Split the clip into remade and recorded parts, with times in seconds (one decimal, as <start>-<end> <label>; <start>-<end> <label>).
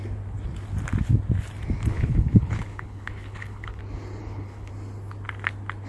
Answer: 0.0-1.9 recorded; 1.9-3.8 remade; 3.8-4.2 recorded; 4.2-4.7 remade; 4.7-5.9 recorded